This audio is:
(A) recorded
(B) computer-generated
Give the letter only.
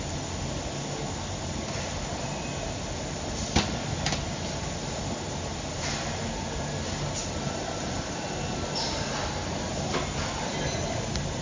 A